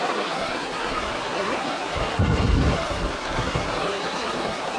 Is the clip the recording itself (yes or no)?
no